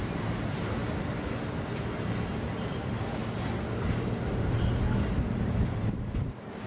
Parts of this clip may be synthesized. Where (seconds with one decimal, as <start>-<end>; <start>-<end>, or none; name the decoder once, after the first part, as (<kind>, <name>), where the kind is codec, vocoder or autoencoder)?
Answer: 0.0-0.8 (vocoder, BigVGAN v2); 2.3-3.2; 3.8-6.7